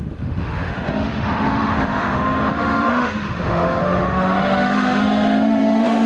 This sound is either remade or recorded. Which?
remade